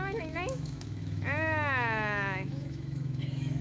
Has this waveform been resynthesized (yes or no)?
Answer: yes